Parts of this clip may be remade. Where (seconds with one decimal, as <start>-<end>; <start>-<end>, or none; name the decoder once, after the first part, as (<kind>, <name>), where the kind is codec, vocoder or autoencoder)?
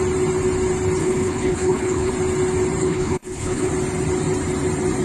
1.0-2.1 (codec, HILCodec); 2.8-3.7